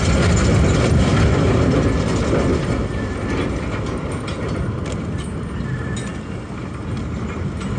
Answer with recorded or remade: recorded